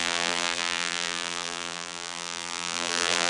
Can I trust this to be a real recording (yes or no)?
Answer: no